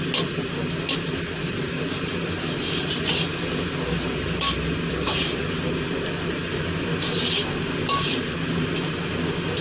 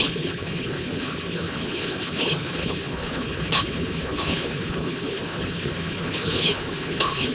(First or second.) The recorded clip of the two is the first